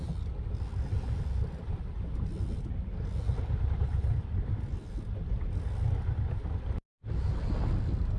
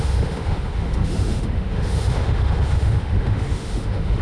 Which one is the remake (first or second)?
second